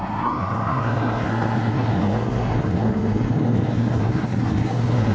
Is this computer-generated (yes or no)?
yes